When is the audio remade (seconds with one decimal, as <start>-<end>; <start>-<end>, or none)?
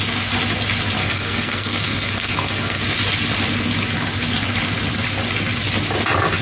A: 1.0-2.8